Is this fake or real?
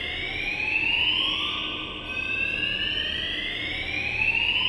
real